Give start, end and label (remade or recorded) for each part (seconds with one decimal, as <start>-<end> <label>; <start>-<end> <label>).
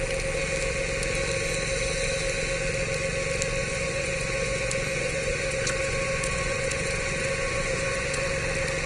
0.0-3.6 recorded; 3.6-8.3 remade; 8.3-8.9 recorded